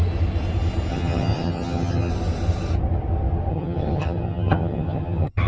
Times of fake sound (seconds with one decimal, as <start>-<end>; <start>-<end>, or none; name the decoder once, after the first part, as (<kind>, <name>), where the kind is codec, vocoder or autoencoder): 0.9-2.1 (vocoder, HiFi-GAN); 3.5-5.5